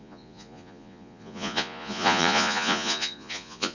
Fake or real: fake